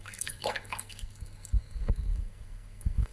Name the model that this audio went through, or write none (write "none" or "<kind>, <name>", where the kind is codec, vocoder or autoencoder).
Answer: codec, SNAC